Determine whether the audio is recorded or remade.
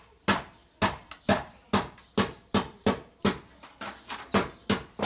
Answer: recorded